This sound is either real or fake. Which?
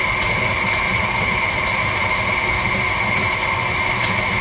real